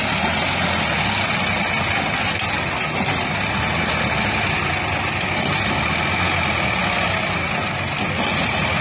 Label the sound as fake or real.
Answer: real